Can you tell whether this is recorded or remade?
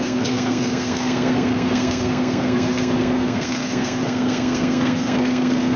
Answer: remade